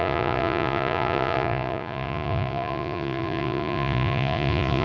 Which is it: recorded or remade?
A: remade